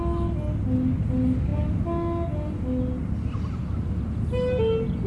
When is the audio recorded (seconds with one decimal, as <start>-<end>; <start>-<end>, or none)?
0.0-5.1